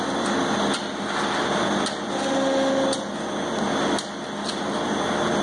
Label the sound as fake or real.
real